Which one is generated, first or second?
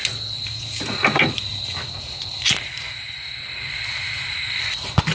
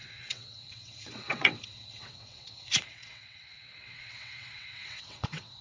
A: second